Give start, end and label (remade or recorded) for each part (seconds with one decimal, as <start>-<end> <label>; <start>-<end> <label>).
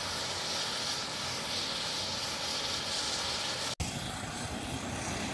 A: 0.0-5.3 recorded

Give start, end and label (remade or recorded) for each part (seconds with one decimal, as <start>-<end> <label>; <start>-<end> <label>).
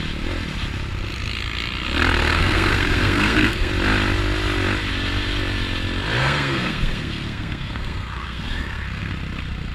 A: 0.0-2.2 recorded; 2.2-3.7 remade; 3.7-6.2 recorded; 6.2-9.1 remade; 9.1-9.7 recorded